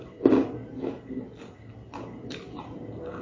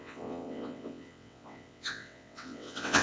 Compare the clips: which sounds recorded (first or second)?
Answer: first